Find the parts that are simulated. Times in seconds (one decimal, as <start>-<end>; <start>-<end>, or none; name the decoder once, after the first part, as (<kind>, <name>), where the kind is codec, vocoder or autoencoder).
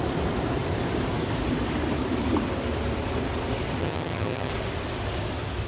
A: 3.8-4.5 (vocoder, HiFi-GAN)